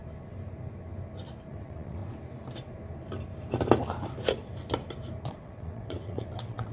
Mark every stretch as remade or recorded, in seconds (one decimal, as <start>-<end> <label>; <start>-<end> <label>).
0.0-1.5 recorded; 1.5-2.0 remade; 2.0-5.2 recorded; 5.2-6.7 remade